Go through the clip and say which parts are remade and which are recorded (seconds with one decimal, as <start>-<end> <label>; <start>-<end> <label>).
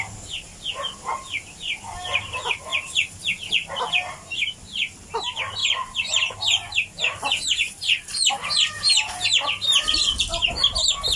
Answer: 0.0-5.6 recorded; 5.6-8.7 remade; 8.7-11.2 recorded